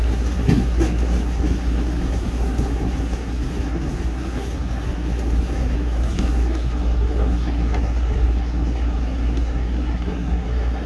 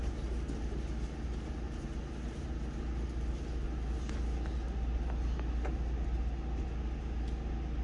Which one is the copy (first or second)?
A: first